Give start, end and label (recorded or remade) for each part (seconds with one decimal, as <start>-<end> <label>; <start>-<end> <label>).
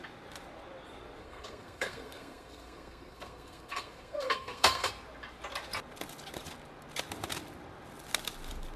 0.0-1.2 recorded; 1.2-4.9 remade; 4.9-8.8 recorded